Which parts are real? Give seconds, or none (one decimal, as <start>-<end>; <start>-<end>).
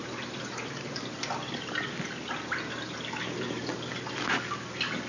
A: 0.0-5.1